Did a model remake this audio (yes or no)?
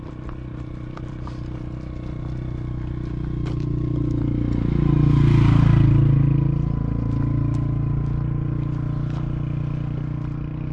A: no